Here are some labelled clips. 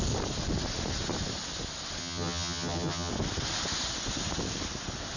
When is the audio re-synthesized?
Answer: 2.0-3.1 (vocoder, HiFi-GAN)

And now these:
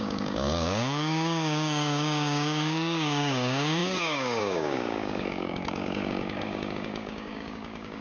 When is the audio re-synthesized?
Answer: 0.0-8.0 (codec, DAC)

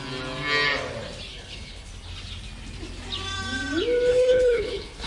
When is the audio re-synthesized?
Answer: 1.3-1.9 (codec, HILCodec); 4.1-5.1

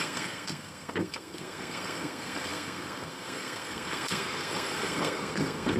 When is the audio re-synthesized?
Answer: 0.0-5.8 (codec, SNAC)

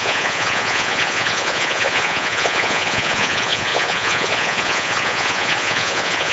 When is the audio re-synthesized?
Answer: 0.0-6.3 (vocoder, Vocos)

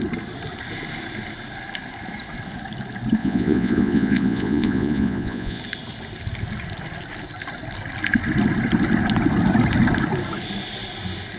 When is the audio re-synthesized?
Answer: 3.2-5.6 (vocoder, Vocos)

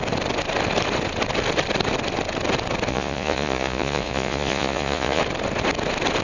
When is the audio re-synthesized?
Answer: 2.9-5.2 (vocoder, Vocos)

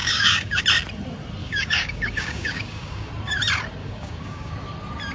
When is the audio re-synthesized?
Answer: 0.0-0.6 (codec, DAC); 1.4-3.1; 3.8-4.5